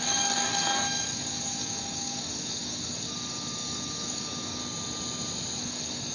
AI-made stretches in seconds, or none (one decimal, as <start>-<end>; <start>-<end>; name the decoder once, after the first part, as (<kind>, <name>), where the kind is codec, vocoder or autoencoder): 0.0-4.6 (codec, DAC); 5.6-6.1